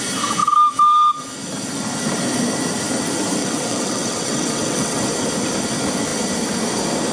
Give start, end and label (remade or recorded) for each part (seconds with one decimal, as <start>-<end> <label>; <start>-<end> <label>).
0.0-3.4 recorded; 3.4-5.0 remade; 5.0-7.1 recorded